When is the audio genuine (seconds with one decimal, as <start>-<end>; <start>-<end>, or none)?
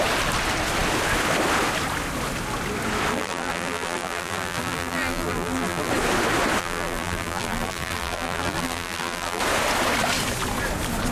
0.0-3.1; 5.9-6.6; 9.4-11.1